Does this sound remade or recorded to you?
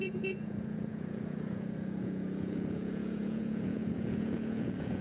remade